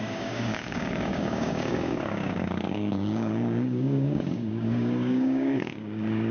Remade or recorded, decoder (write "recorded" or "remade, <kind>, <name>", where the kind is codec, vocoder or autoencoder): remade, codec, DAC